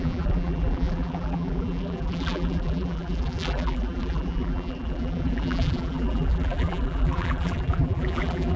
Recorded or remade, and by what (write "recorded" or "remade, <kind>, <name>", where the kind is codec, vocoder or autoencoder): remade, vocoder, BigVGAN v2